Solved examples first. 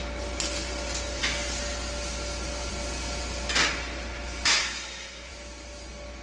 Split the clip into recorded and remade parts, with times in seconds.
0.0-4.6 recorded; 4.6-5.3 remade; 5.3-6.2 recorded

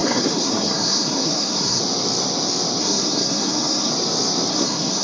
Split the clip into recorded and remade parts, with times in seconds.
0.0-1.8 remade; 1.8-2.8 recorded; 2.8-3.9 remade; 3.9-4.5 recorded; 4.5-5.0 remade

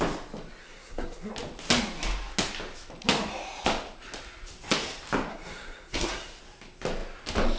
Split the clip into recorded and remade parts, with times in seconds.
0.0-0.6 recorded; 0.6-1.3 remade; 1.3-5.3 recorded; 5.3-6.4 remade; 6.4-7.6 recorded

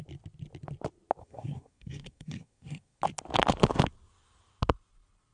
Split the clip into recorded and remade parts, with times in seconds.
0.0-1.2 recorded; 1.2-3.0 remade; 3.0-5.3 recorded

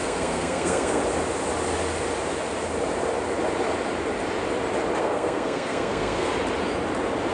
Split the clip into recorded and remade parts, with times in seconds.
0.0-1.0 remade; 1.0-5.0 recorded; 5.0-6.3 remade; 6.3-7.3 recorded

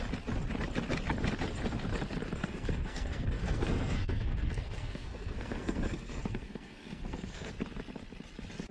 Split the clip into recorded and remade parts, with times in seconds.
0.0-2.4 recorded; 2.4-7.5 remade; 7.5-8.7 recorded